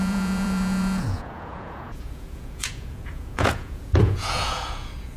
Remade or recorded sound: remade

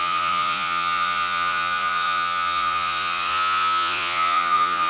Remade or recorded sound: remade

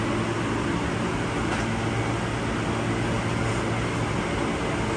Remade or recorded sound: recorded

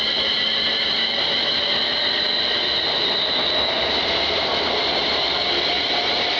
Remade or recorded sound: recorded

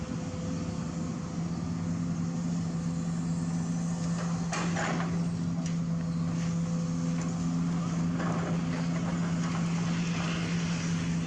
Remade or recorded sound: recorded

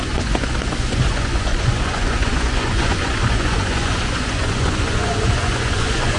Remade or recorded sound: remade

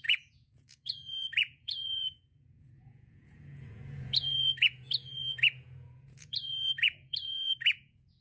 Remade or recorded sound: remade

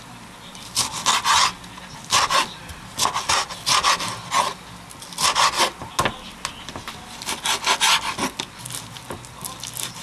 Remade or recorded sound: recorded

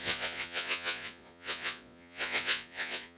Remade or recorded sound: remade